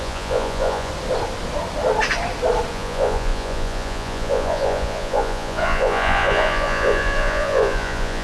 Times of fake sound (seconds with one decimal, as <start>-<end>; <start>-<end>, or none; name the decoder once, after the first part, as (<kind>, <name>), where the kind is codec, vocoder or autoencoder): 0.0-0.9 (vocoder, Vocos); 2.7-8.2